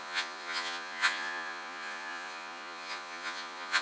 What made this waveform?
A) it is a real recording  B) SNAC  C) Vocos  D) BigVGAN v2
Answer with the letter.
C